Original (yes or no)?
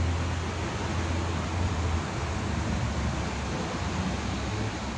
yes